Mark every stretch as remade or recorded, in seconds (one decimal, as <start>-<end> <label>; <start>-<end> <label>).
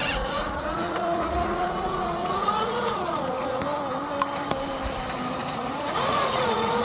0.0-3.6 remade; 3.6-5.4 recorded; 5.4-6.8 remade